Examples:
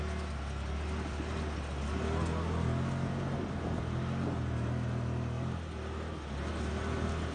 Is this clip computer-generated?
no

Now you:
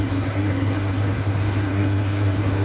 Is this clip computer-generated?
yes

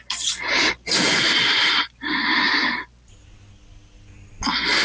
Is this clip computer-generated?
no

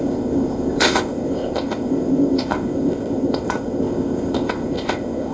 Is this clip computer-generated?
yes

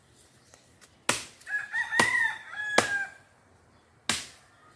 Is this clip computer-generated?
no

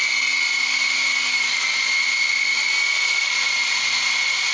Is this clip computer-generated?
no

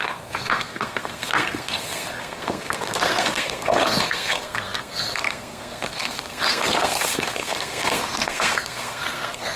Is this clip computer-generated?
yes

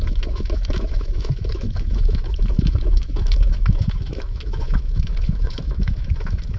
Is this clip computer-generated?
yes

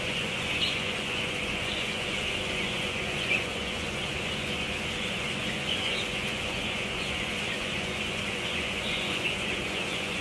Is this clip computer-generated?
yes